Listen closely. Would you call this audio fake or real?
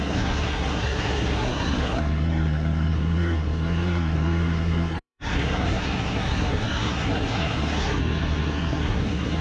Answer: fake